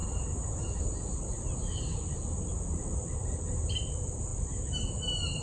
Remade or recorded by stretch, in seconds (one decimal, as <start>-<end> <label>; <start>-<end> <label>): 0.0-5.4 recorded